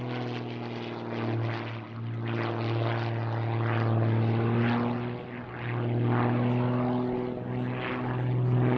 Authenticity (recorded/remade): recorded